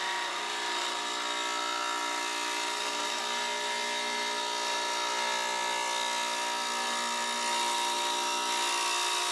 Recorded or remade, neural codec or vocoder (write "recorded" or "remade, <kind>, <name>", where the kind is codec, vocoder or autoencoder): recorded